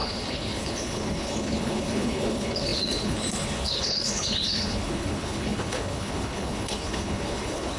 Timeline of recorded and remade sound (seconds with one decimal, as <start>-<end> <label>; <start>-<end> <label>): 0.0-7.8 remade

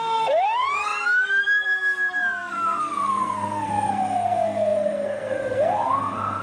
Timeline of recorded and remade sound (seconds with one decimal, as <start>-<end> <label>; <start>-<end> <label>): 0.0-6.4 remade

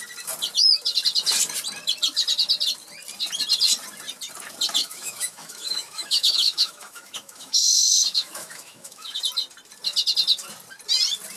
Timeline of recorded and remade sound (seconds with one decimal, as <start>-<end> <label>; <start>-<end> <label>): 0.0-4.8 recorded; 4.8-9.2 remade; 9.2-11.4 recorded